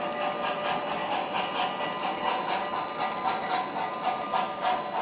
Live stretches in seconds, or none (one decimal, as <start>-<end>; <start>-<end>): 0.0-5.0